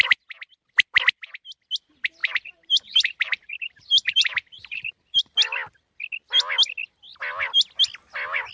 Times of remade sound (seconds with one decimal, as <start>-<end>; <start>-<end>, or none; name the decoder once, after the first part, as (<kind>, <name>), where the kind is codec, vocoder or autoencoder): 2.2-5.2 (vocoder, BigVGAN v2)